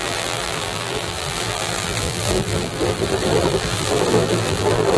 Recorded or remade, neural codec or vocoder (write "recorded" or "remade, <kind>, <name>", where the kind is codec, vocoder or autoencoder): remade, vocoder, BigVGAN v2